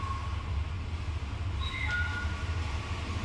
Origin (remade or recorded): recorded